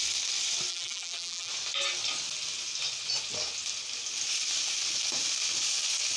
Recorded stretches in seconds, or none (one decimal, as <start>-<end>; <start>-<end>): 0.0-0.7; 1.5-6.2